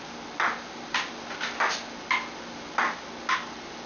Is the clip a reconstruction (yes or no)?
no